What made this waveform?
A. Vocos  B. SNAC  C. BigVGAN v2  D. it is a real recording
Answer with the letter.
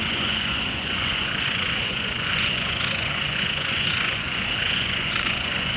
A